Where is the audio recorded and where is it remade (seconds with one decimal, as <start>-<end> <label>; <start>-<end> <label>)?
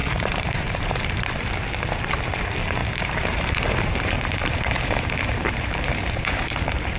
0.0-1.3 remade; 1.3-2.8 recorded; 2.8-7.0 remade